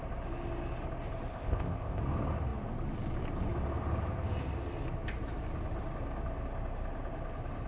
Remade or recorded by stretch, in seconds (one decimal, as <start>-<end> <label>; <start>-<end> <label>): 0.0-1.3 recorded; 1.3-2.0 remade; 2.0-7.7 recorded